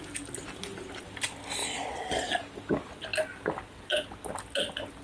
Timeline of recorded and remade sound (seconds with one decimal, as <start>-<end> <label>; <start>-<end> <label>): 0.0-1.6 recorded; 1.6-2.3 remade; 2.3-5.0 recorded